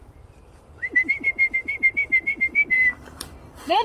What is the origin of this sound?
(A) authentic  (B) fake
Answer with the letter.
B